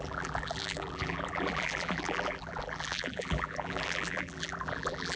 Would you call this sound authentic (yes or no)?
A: no